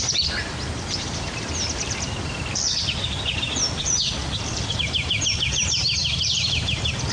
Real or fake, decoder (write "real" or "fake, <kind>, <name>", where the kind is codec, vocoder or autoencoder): fake, vocoder, BigVGAN v2